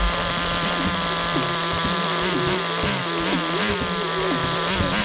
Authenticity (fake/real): real